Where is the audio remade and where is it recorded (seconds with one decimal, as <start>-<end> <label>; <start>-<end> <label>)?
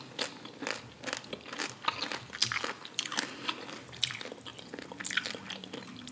0.0-6.1 recorded